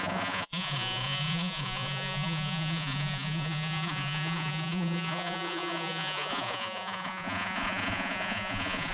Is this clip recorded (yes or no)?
no